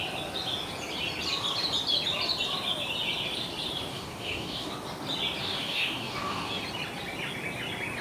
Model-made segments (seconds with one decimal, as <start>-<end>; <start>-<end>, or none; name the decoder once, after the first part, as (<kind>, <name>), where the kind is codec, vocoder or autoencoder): 3.9-4.7 (codec, DAC); 5.4-6.6